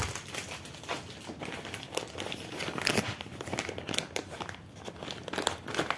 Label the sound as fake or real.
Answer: real